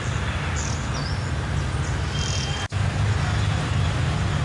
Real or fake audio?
real